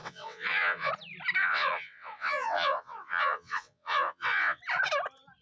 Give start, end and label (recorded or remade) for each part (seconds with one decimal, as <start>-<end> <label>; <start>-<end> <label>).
0.0-0.9 remade; 0.9-1.4 recorded; 1.4-4.6 remade; 4.6-5.4 recorded